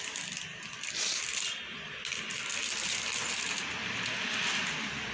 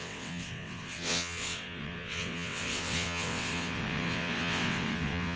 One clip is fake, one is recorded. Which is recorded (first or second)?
first